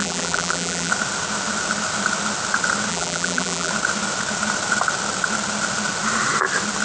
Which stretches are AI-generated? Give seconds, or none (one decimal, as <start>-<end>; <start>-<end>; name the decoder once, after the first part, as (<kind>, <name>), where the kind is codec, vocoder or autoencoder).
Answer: 0.0-0.9 (vocoder, BigVGAN v2); 2.9-3.7